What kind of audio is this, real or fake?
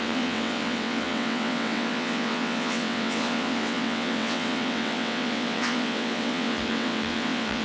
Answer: fake